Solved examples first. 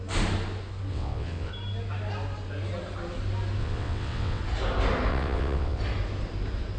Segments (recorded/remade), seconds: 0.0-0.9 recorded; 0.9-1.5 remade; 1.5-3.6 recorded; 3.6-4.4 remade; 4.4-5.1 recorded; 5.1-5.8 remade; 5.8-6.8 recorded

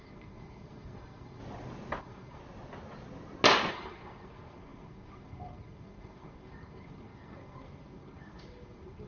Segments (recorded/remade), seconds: 0.0-1.4 remade; 1.4-2.0 recorded; 2.0-2.4 remade; 2.4-3.7 recorded; 3.7-9.1 remade

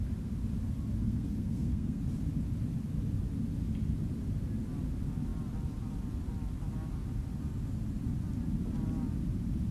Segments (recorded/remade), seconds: 0.0-1.0 recorded; 1.0-2.0 remade; 2.0-9.7 recorded

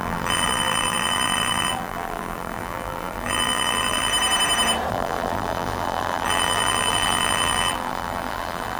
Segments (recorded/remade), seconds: 0.0-4.1 remade; 4.1-4.9 recorded; 4.9-8.8 remade

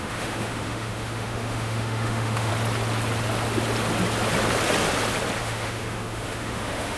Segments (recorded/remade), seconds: 0.0-2.5 remade; 2.5-5.4 recorded; 5.4-7.0 remade